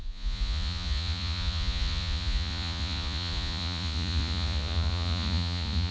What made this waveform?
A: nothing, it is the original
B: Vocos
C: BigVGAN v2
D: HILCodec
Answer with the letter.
B